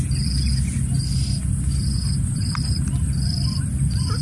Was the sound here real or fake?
real